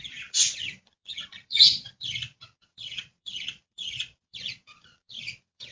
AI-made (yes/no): yes